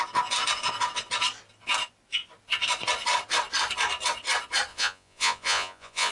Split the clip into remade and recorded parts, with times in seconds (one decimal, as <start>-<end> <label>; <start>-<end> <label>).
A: 0.0-4.7 recorded; 4.7-6.1 remade